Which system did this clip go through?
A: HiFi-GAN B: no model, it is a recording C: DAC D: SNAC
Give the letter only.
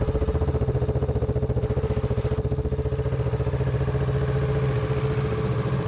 B